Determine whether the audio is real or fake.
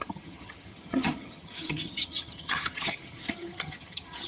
fake